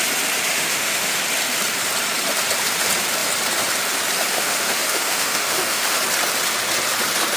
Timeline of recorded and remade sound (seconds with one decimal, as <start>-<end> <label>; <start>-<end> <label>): 0.0-0.5 recorded; 0.5-1.2 remade; 1.2-4.3 recorded; 4.3-6.0 remade; 6.0-7.4 recorded